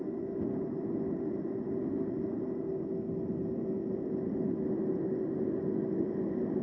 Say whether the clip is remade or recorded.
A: recorded